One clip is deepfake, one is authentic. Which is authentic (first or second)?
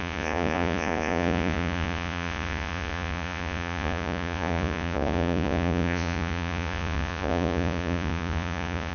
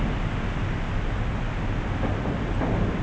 second